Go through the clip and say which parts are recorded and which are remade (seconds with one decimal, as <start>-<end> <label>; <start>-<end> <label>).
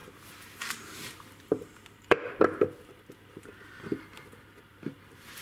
0.0-2.4 remade; 2.4-5.4 recorded